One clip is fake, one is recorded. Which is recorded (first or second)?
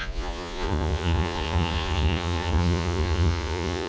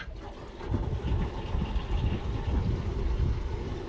second